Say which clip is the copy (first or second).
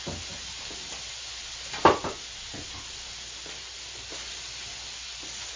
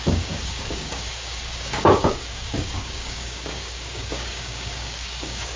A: second